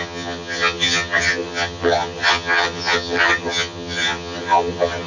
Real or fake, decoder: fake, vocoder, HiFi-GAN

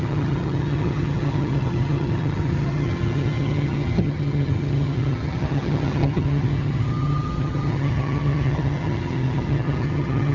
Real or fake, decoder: fake, vocoder, HiFi-GAN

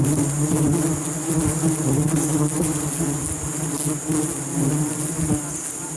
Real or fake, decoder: real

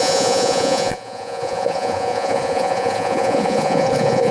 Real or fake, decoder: fake, vocoder, Vocos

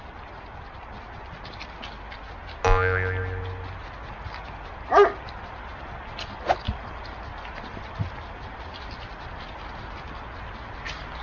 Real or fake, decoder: real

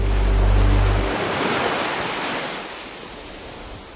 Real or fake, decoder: real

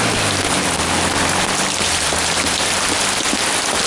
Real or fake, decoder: real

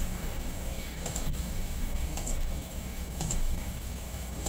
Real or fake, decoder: fake, codec, DAC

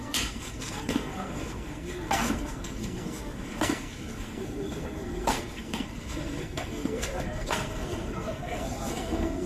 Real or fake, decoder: fake, codec, SNAC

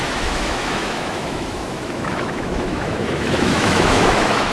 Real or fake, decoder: fake, autoencoder, DAC-VAE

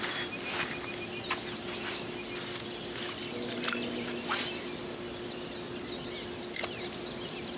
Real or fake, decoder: real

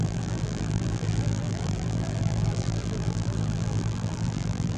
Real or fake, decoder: fake, vocoder, BigVGAN v2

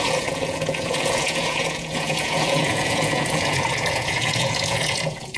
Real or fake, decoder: fake, vocoder, Vocos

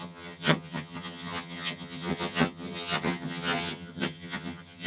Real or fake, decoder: fake, vocoder, HiFi-GAN